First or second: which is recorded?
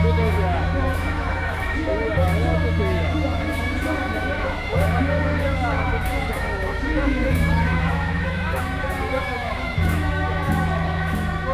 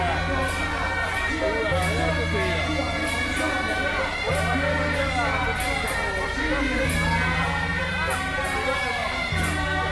second